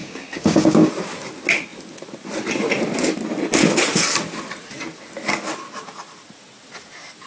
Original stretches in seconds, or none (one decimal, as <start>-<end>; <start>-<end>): 0.9-7.3